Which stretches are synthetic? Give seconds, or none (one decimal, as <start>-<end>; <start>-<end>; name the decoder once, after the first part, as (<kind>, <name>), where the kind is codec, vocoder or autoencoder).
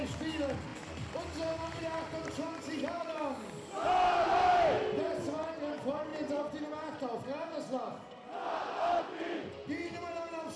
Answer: none